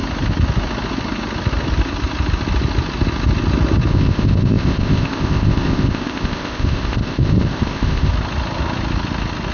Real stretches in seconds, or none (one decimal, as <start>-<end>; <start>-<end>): 0.0-3.9; 8.1-9.5